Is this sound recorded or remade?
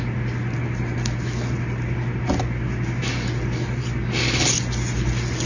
recorded